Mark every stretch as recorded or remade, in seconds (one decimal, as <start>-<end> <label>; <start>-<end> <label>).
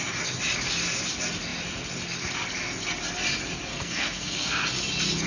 0.0-3.7 recorded; 3.7-4.5 remade; 4.5-5.3 recorded